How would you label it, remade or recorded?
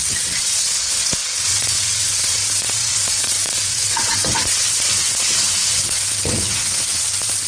remade